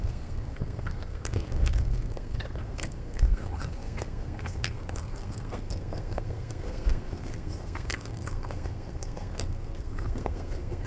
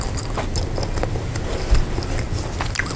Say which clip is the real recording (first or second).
second